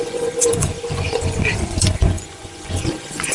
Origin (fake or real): fake